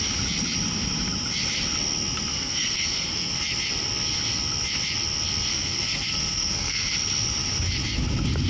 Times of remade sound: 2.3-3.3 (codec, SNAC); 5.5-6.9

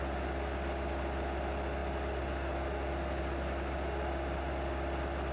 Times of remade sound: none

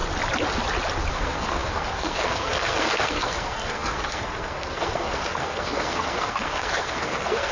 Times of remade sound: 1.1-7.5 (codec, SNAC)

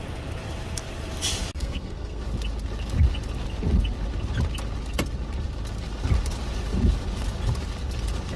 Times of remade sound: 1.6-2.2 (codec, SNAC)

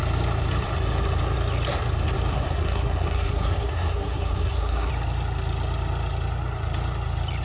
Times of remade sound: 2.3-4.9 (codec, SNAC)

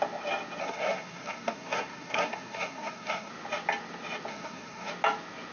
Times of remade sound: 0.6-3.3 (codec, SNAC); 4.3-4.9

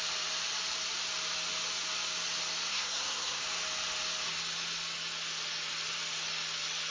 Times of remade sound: 2.7-3.4 (codec, SNAC)